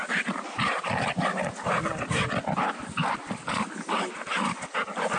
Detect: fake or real real